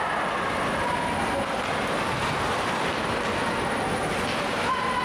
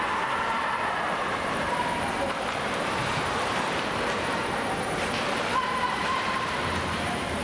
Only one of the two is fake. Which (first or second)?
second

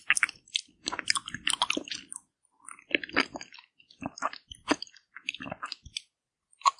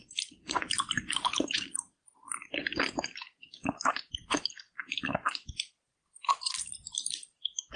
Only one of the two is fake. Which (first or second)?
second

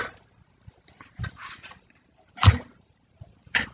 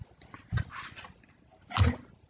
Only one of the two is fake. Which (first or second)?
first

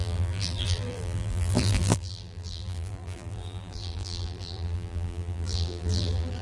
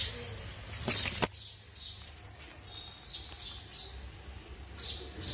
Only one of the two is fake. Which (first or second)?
first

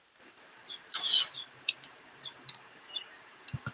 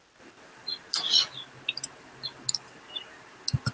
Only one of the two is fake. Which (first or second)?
first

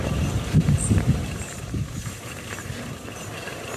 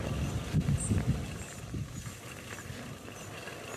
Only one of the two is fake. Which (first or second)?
first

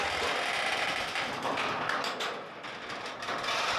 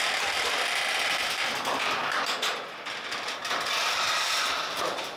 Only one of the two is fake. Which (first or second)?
second